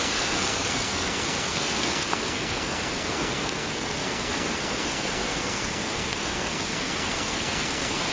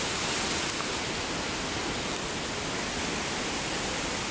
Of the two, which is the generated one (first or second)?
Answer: first